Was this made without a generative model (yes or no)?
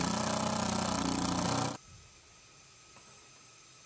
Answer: yes